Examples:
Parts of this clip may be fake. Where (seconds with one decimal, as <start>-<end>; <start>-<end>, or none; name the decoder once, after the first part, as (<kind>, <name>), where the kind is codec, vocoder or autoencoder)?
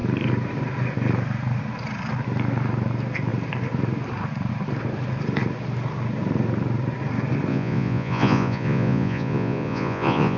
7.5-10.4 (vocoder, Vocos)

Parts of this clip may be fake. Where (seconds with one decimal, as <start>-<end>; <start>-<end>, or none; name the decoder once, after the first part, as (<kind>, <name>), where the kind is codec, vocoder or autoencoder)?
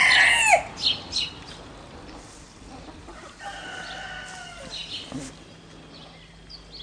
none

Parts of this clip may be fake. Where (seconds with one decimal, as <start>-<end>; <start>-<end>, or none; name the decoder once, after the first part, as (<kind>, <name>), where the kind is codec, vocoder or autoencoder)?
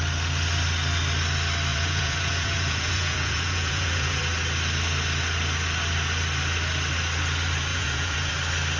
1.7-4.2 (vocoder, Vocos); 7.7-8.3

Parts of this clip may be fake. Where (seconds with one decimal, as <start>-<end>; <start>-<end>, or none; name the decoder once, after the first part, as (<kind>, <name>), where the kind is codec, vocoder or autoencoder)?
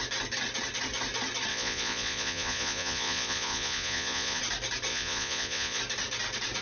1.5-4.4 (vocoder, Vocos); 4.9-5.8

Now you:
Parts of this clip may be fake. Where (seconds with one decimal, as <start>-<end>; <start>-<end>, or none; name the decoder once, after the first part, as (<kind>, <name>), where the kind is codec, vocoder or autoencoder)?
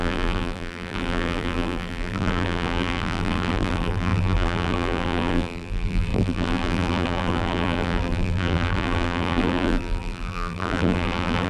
0.0-11.5 (vocoder, BigVGAN v2)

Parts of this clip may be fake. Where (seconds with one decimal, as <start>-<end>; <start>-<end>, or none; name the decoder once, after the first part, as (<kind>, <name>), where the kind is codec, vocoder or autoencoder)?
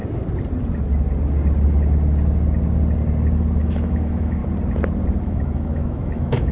3.6-4.4 (autoencoder, DAC-VAE); 5.2-6.5